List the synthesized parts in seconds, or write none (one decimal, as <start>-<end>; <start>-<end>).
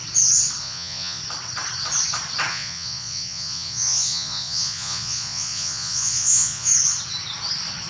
0.6-1.2; 2.5-6.7